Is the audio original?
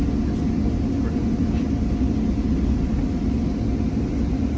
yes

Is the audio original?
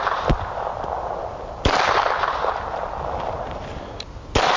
yes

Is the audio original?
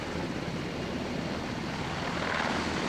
yes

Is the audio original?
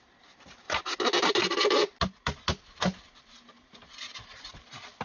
yes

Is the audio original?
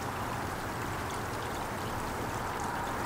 yes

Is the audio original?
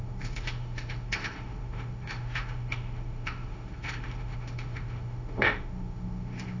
no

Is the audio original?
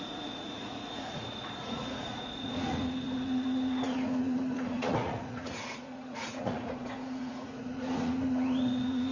no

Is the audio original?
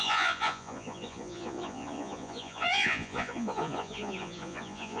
no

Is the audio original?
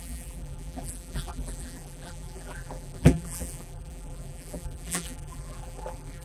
no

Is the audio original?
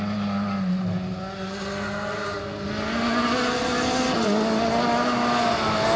yes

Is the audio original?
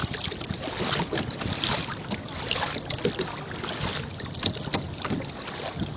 yes